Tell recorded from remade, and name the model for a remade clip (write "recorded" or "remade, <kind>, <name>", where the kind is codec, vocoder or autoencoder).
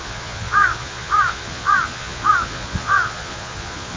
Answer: remade, vocoder, Vocos